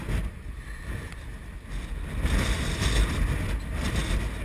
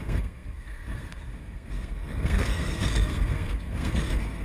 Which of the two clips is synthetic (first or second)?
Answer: second